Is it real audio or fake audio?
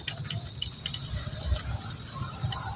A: real